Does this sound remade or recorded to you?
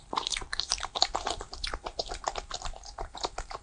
remade